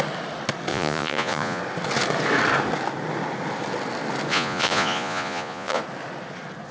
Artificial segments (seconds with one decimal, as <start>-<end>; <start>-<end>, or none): 0.7-1.6; 4.3-5.8